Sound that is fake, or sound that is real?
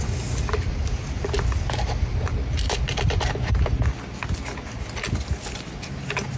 real